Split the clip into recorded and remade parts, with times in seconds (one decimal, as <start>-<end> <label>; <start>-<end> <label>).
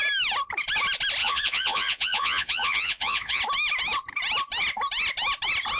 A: 0.0-1.2 recorded; 1.2-3.4 remade; 3.4-5.8 recorded